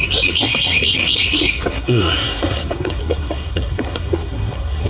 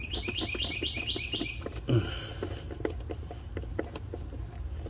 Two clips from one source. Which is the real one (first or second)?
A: second